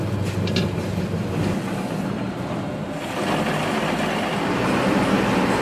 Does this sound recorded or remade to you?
recorded